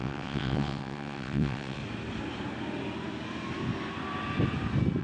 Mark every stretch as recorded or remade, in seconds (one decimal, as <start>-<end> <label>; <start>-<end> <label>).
0.0-1.8 remade; 1.8-5.0 recorded